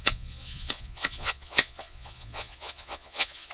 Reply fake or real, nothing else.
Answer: fake